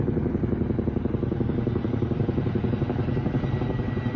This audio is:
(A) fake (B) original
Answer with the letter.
A